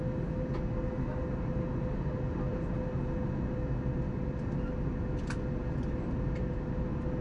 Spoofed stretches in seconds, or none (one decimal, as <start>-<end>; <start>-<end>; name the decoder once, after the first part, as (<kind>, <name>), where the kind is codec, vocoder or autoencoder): none